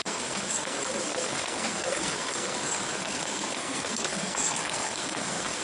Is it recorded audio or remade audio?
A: remade